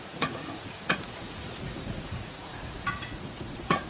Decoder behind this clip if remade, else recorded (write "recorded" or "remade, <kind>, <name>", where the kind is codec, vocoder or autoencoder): remade, vocoder, Vocos